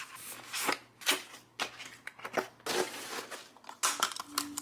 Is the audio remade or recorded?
recorded